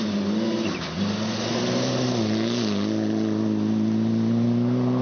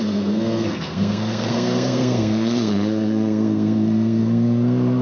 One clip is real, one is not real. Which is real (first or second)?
first